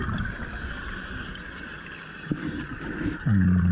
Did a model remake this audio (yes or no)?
no